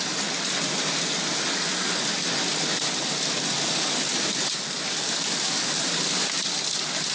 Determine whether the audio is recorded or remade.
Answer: recorded